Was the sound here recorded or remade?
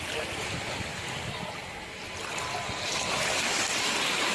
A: recorded